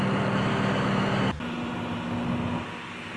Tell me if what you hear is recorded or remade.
recorded